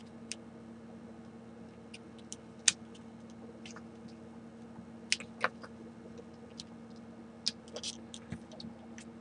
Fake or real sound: real